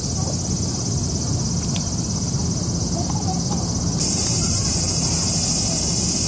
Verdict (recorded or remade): recorded